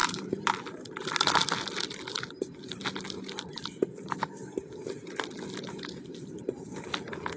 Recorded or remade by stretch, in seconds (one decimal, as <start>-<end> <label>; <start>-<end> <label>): 0.0-0.5 remade; 0.5-7.4 recorded